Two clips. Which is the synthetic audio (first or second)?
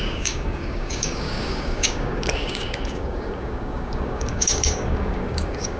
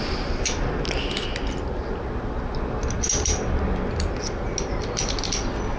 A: first